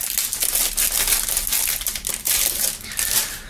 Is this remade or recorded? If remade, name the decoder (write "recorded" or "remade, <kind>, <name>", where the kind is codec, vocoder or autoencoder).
recorded